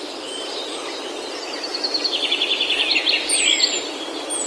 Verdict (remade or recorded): recorded